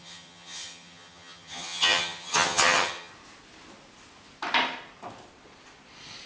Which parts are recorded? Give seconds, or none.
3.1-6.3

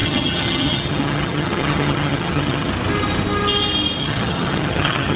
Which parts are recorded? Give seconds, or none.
2.7-4.0